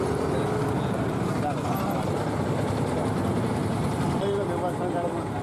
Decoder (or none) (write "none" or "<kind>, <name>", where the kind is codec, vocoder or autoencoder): none